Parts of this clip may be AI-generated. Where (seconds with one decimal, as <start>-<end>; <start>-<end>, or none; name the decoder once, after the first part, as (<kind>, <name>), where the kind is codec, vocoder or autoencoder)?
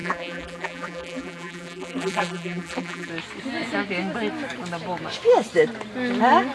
0.0-3.1 (vocoder, BigVGAN v2)